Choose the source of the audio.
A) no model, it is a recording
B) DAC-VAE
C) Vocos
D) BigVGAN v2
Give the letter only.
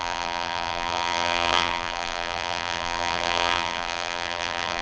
D